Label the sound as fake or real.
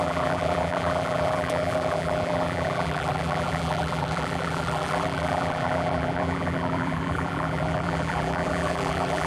fake